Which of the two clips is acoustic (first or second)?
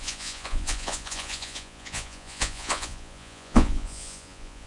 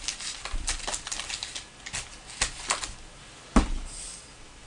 second